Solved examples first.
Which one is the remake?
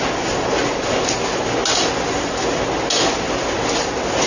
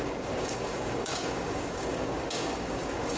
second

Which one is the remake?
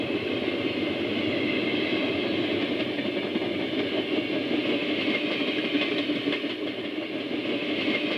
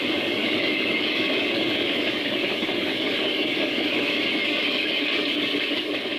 second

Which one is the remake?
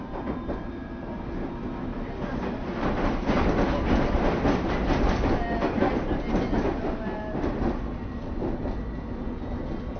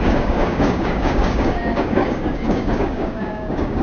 second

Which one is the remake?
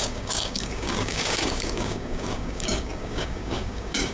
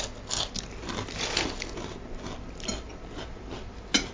first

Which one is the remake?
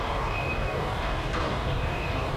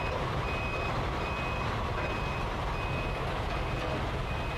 first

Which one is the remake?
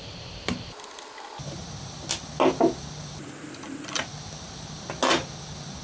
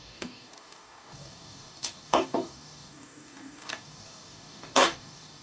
second